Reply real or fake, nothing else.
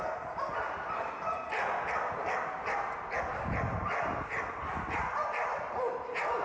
real